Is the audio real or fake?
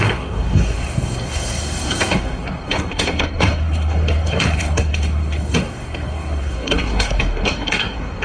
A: fake